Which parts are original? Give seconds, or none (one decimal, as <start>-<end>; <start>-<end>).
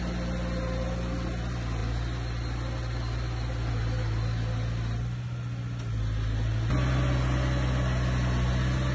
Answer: 0.0-8.9